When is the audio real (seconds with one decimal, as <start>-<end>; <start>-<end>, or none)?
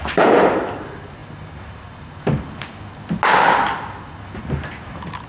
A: 0.0-5.3